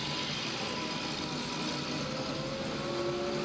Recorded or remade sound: recorded